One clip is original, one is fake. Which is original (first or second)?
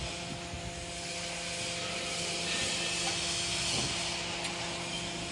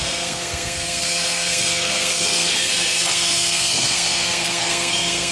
first